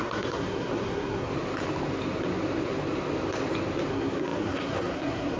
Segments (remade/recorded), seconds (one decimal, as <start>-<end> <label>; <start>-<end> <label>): 0.0-1.3 remade; 1.3-3.9 recorded; 3.9-5.4 remade

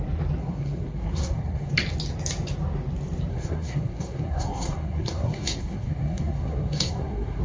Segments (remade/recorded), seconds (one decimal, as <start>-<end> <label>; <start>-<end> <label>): 0.0-0.4 recorded; 0.4-1.7 remade; 1.7-3.3 recorded; 3.3-7.4 remade

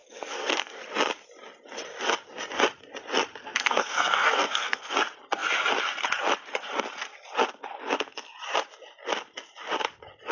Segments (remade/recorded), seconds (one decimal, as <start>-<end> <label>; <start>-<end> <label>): 0.0-0.8 remade; 0.8-3.4 recorded; 3.4-4.9 remade; 4.9-10.3 recorded

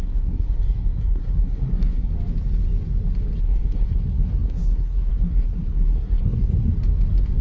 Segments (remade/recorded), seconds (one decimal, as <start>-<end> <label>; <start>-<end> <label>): 0.0-2.1 remade; 2.1-3.4 recorded; 3.4-6.7 remade; 6.7-7.4 recorded

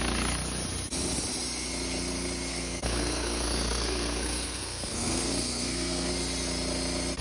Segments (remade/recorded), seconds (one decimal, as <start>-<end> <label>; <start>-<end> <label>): 0.0-2.5 recorded; 2.5-6.1 remade; 6.1-7.2 recorded

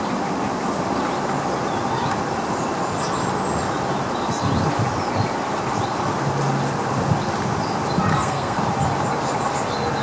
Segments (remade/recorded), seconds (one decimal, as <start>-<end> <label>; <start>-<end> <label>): 0.0-8.1 recorded; 8.1-8.6 remade; 8.6-10.0 recorded